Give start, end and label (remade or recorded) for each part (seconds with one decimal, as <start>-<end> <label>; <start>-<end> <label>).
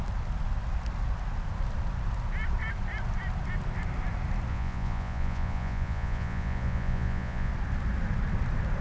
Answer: 0.0-4.5 recorded; 4.5-7.5 remade; 7.5-8.8 recorded